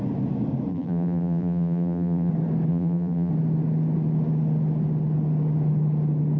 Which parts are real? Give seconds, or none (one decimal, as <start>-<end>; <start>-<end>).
0.0-0.7; 2.3-2.7; 3.3-6.4